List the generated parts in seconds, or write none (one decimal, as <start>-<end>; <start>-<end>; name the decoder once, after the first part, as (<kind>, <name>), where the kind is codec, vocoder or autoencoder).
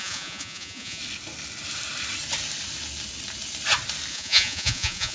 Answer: 0.0-1.0 (vocoder, Vocos); 4.1-5.1